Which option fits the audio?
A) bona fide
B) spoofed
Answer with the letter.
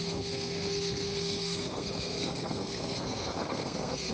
B